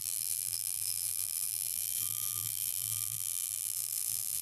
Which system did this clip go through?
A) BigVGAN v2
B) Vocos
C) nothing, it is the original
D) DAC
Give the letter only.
A